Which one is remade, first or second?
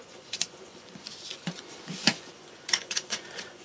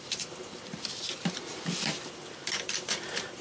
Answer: first